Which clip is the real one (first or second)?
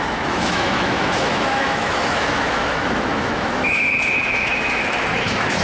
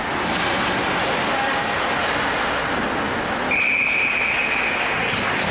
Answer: second